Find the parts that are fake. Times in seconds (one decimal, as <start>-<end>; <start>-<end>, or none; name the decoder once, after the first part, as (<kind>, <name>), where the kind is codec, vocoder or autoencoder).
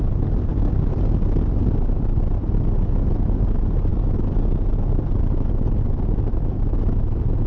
none